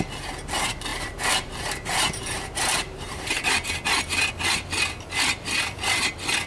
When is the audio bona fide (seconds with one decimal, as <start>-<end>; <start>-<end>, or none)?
0.0-0.9; 3.7-6.5